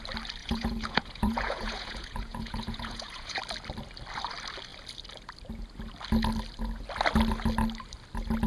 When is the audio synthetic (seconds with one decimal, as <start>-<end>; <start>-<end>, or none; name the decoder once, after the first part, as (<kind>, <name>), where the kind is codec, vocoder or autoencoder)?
0.4-3.4 (vocoder, Vocos)